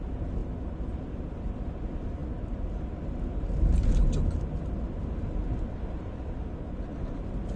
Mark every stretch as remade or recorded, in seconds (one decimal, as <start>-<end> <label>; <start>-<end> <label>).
0.0-7.6 recorded